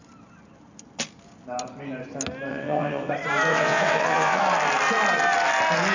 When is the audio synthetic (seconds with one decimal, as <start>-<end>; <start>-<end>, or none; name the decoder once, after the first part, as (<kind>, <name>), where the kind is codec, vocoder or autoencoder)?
2.5-3.1 (vocoder, WaveNeXt); 3.5-4.4